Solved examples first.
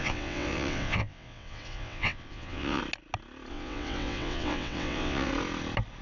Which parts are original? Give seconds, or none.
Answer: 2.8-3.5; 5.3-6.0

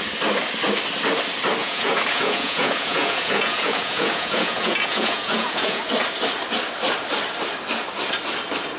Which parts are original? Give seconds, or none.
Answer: 0.0-1.6; 5.8-8.8

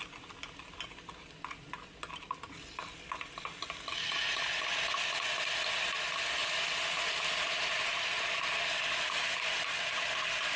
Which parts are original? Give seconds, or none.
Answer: 0.0-10.6